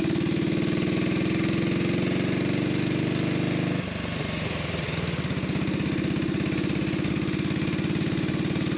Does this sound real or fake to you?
real